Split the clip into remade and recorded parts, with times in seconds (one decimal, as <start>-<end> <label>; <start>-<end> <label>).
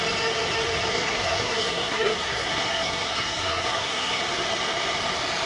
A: 0.0-0.9 recorded; 0.9-4.2 remade; 4.2-5.5 recorded